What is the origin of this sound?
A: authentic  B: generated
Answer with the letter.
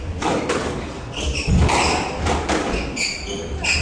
A